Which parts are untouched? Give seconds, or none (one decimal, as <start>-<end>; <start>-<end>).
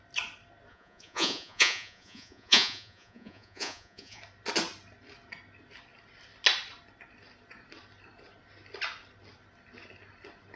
0.0-0.7; 4.2-10.6